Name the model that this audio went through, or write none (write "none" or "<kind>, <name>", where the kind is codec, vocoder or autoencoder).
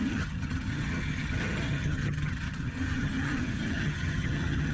vocoder, HiFi-GAN